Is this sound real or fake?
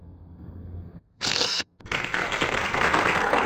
fake